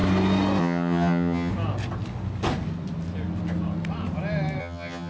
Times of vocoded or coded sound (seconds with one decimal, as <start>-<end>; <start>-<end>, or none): 0.6-1.5; 4.6-5.1